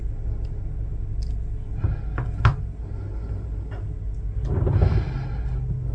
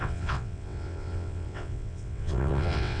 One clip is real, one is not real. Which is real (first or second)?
first